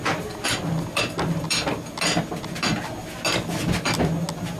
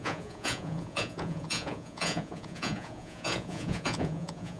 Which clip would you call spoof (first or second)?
second